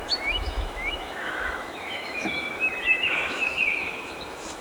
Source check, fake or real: fake